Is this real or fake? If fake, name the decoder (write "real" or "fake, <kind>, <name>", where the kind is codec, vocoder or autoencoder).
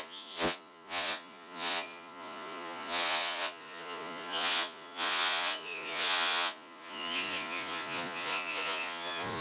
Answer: fake, vocoder, Vocos